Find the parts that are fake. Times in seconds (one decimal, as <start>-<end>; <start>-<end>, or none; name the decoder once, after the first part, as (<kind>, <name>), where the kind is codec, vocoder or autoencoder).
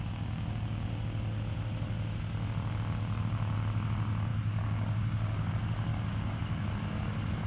4.3-5.5 (codec, DAC); 5.9-6.7